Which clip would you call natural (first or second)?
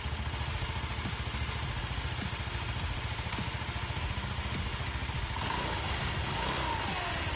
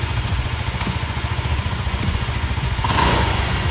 first